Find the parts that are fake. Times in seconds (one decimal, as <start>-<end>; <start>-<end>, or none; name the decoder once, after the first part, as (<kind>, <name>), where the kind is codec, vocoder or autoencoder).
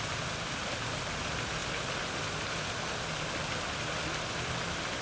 none